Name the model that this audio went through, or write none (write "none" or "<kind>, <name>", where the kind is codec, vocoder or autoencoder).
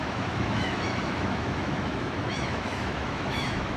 autoencoder, DAC-VAE